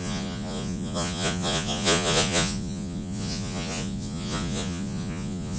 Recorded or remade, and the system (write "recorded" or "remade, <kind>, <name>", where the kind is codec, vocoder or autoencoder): remade, vocoder, Vocos